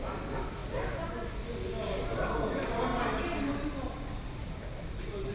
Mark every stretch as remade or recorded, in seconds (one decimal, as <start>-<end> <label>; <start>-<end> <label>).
0.0-5.3 recorded